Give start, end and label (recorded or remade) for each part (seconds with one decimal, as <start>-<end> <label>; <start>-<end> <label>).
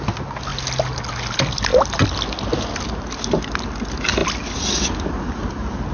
0.0-5.9 recorded